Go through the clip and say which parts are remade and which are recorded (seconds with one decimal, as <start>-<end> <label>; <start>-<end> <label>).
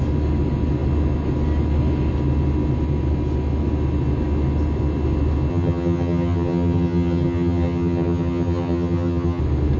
0.0-5.5 recorded; 5.5-9.4 remade; 9.4-9.8 recorded